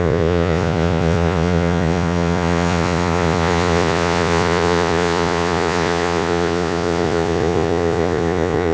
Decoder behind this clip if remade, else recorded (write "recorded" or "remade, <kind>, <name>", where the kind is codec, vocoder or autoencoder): remade, vocoder, Vocos